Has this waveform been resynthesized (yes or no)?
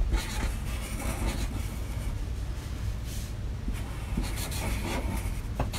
no